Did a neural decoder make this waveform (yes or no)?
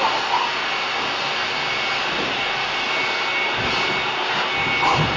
no